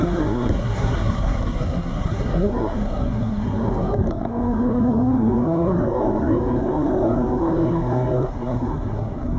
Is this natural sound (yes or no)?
no